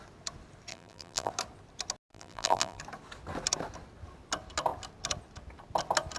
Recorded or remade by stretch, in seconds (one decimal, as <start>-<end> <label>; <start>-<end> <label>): 0.0-0.7 recorded; 0.7-1.3 remade; 1.3-2.1 recorded; 2.1-2.8 remade; 2.8-6.2 recorded